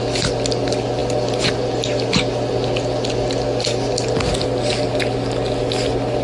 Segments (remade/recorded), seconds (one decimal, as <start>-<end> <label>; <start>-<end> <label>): 0.0-6.2 recorded